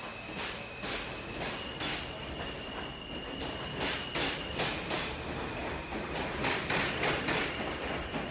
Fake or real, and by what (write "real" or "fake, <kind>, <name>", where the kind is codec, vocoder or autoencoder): real